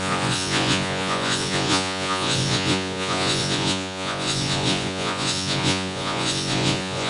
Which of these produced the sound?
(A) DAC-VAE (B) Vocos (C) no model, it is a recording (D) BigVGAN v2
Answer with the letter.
B